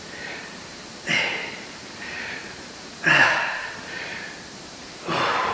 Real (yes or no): no